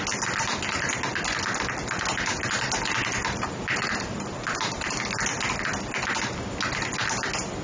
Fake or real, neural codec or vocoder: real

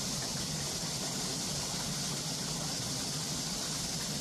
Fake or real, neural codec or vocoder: real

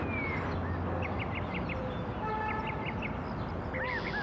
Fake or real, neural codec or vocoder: real